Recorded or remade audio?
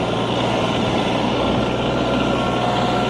recorded